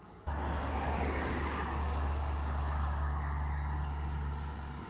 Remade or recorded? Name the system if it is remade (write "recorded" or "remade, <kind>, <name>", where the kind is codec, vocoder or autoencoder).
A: remade, codec, DAC